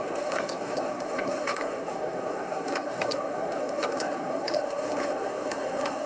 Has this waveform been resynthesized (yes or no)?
yes